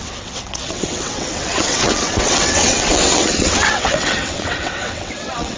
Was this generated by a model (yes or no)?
yes